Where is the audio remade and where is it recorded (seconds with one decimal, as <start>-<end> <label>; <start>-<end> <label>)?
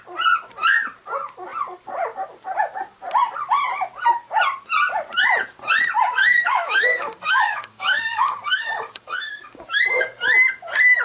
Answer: 0.0-6.3 recorded; 6.3-10.2 remade; 10.2-11.0 recorded